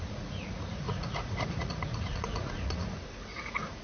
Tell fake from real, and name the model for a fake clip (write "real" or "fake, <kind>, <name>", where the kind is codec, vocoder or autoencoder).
fake, vocoder, Vocos